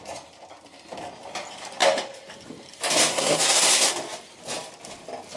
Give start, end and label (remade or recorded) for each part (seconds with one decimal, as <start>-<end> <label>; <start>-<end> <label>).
0.0-3.1 recorded; 3.1-3.9 remade; 3.9-5.4 recorded